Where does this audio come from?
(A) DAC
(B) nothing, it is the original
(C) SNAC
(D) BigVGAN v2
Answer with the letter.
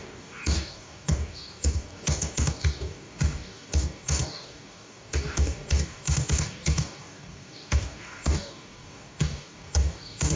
A